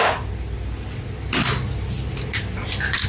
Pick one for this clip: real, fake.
real